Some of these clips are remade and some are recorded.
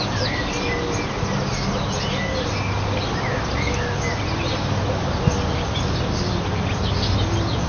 recorded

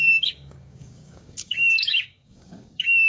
remade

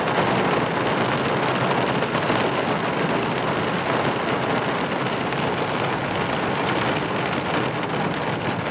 recorded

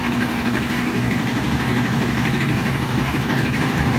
remade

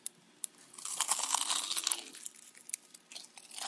recorded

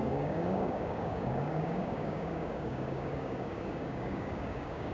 remade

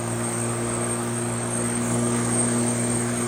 remade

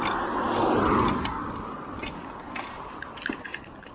recorded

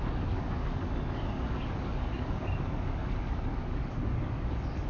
remade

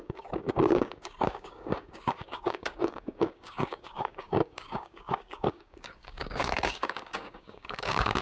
remade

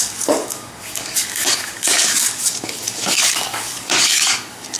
remade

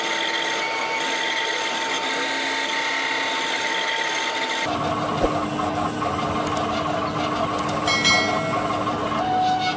recorded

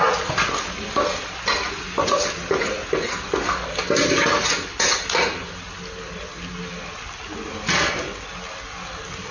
recorded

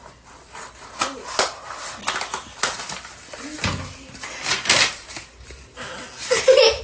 recorded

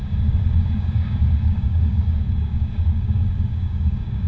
remade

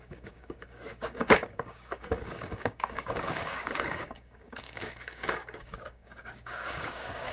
remade